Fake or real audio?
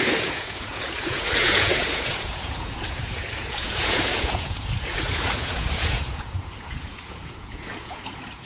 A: fake